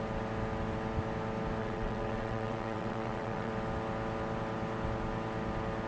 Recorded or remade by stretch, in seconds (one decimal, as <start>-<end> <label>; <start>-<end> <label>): 0.0-1.6 recorded; 1.6-3.5 remade; 3.5-5.9 recorded